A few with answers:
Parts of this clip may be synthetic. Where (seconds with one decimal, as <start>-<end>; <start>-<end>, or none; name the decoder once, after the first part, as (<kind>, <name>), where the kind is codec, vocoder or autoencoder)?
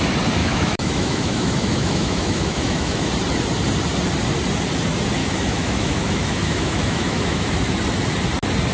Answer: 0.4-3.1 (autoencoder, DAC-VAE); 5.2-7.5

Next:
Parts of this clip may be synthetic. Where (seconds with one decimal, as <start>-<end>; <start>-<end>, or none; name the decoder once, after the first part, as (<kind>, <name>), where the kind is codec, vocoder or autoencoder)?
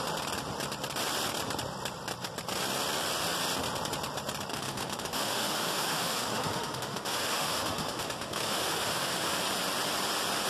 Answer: 4.5-9.4 (autoencoder, DAC-VAE)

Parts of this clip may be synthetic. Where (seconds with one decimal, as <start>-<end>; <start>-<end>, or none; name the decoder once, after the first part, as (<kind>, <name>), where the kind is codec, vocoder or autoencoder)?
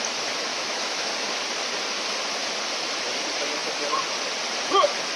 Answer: 0.5-1.1 (autoencoder, DAC-VAE)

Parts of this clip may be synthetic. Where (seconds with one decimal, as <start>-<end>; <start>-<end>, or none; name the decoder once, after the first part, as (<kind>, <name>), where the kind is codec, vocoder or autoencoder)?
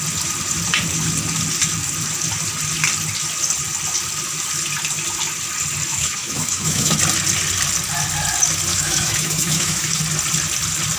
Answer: 5.9-7.0 (autoencoder, DAC-VAE); 8.7-10.0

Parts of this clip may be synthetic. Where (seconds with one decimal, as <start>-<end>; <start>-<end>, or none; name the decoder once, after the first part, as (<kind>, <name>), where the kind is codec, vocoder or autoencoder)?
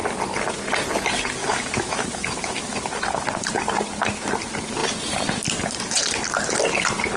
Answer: 1.4-2.9 (autoencoder, DAC-VAE)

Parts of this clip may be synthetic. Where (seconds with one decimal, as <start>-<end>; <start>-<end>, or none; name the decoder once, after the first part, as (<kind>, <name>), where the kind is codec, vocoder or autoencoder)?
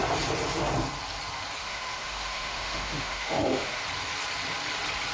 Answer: 1.6-3.8 (autoencoder, DAC-VAE)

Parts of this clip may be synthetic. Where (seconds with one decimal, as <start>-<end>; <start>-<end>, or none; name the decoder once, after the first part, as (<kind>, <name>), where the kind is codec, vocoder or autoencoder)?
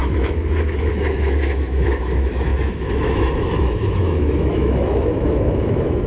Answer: 0.0-6.1 (autoencoder, DAC-VAE)